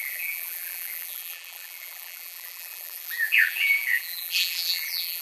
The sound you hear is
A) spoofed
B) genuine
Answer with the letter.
A